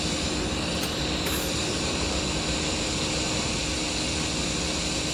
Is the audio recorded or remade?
recorded